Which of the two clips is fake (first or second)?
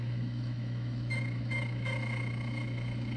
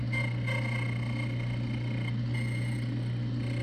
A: first